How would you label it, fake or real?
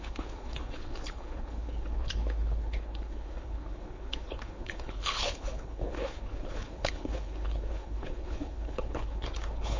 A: fake